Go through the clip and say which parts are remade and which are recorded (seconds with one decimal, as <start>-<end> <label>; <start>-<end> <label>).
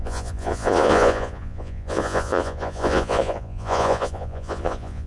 0.0-5.1 remade